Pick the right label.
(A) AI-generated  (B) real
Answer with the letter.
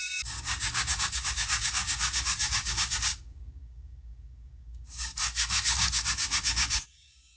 A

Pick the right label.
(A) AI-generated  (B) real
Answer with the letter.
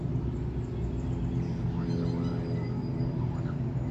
B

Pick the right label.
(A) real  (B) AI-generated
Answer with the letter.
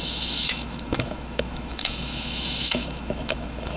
B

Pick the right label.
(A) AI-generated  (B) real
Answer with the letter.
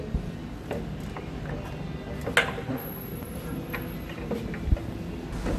B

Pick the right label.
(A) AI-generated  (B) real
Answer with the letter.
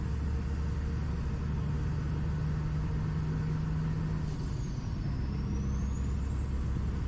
B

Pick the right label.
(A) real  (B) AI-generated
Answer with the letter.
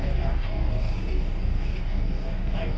B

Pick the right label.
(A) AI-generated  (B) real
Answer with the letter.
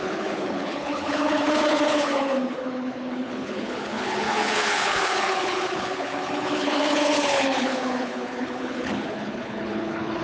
A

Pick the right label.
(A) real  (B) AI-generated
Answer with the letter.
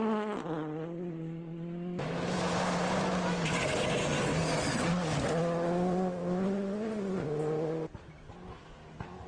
A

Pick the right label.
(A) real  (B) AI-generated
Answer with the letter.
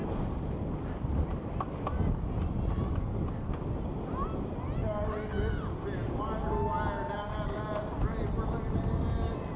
A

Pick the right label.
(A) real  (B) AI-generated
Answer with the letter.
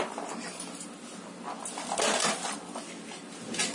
A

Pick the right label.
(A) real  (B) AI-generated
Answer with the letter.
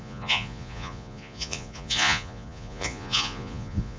B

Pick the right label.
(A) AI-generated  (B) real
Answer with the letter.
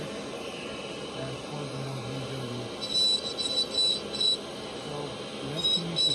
B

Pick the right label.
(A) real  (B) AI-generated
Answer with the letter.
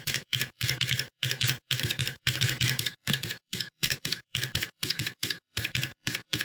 B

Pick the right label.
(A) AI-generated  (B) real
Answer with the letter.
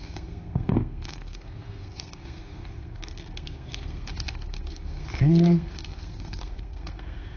A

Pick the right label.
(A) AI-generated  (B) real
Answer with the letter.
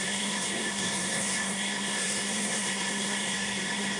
A